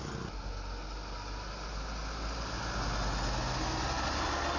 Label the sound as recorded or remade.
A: recorded